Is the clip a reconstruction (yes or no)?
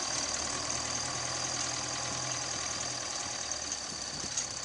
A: yes